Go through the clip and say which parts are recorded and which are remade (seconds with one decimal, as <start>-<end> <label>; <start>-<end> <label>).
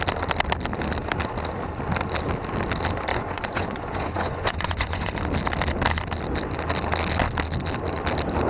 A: 0.0-3.1 recorded; 3.1-5.2 remade; 5.2-8.5 recorded